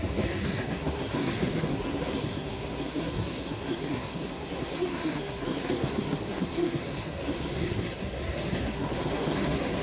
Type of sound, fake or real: fake